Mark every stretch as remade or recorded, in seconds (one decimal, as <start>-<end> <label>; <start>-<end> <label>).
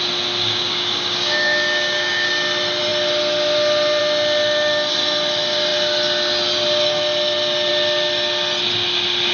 0.0-0.4 recorded; 0.4-2.3 remade; 2.3-9.3 recorded